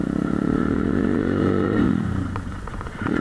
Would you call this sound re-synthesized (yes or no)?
yes